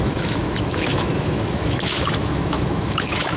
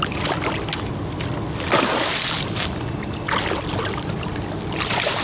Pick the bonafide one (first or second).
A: second